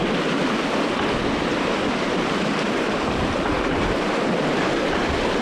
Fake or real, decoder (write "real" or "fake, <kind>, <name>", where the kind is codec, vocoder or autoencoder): real